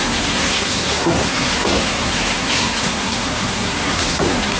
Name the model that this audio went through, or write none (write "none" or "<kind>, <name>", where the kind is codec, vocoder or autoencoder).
codec, SNAC